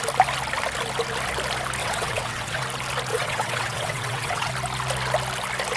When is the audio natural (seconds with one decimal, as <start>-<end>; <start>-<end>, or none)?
0.0-1.8; 2.6-3.1; 4.5-5.8